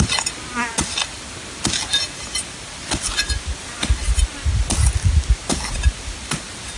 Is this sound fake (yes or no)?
no